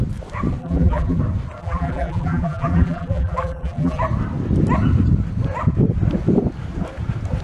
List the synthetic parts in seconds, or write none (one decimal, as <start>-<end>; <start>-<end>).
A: 0.6-1.2; 1.6-4.0